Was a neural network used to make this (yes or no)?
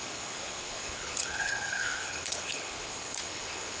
yes